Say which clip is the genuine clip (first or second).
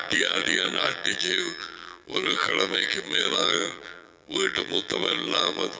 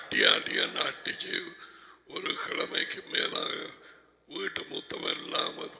second